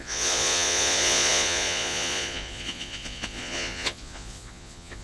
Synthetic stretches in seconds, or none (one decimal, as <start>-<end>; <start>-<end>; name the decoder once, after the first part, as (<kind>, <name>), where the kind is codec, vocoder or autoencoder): 0.0-5.0 (vocoder, Vocos)